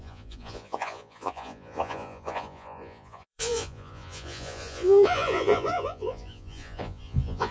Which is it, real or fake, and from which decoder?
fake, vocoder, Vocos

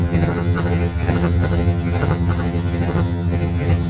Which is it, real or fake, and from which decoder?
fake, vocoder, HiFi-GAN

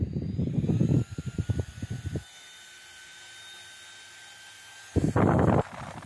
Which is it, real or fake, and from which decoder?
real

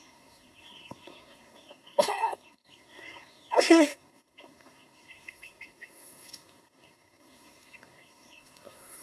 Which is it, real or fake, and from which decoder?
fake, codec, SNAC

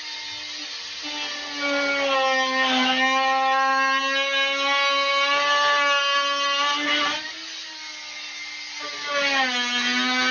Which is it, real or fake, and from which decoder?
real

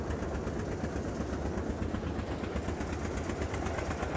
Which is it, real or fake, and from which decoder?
real